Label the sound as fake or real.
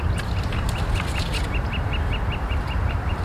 real